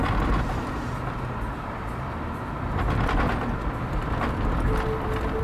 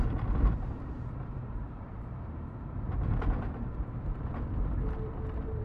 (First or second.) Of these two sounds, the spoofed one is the second